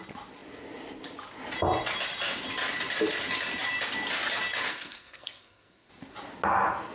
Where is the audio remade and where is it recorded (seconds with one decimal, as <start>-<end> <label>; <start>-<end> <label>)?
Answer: 0.0-4.7 recorded; 4.7-5.9 remade; 5.9-6.9 recorded